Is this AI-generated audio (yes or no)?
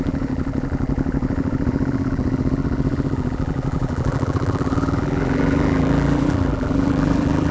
yes